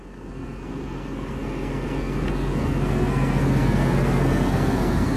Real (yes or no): no